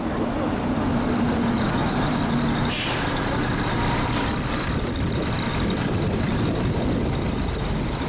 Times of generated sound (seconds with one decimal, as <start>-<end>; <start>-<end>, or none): none